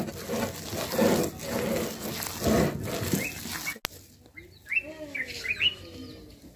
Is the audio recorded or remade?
recorded